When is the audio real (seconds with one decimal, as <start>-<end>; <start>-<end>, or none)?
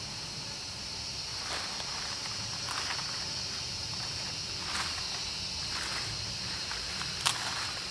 0.0-1.3; 5.0-7.9